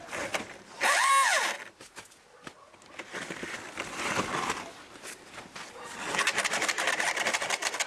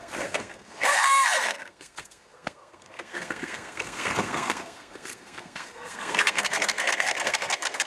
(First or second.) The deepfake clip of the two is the second